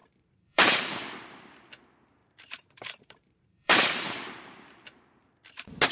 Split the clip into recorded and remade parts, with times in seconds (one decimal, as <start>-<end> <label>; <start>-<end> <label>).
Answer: 0.0-0.8 remade; 0.8-2.2 recorded; 2.2-5.3 remade; 5.3-5.9 recorded